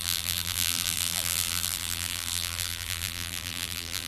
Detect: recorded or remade remade